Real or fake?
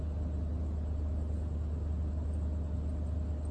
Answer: real